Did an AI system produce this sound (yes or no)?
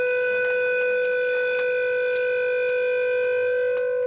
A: no